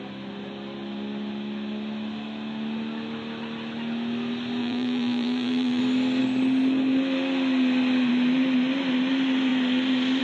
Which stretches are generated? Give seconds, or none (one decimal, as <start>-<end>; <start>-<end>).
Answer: 4.6-5.8